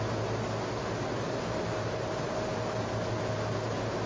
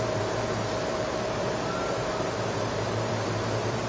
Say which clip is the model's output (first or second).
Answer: second